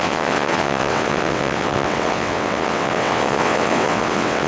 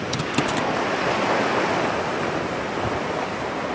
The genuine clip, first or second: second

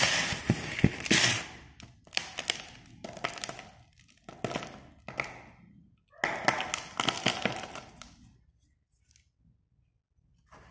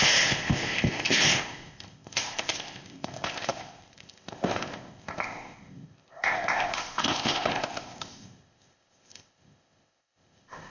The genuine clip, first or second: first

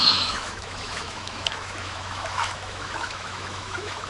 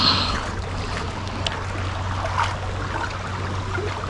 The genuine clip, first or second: second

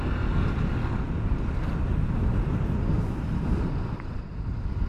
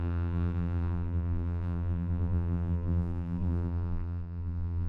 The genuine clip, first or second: first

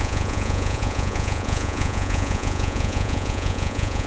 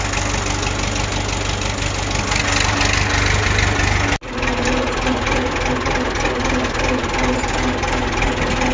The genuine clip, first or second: second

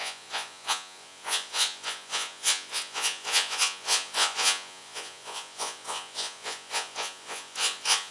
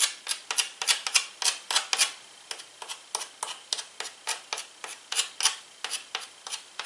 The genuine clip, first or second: second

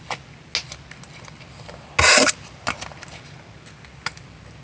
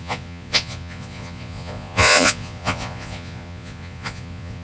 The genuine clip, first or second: first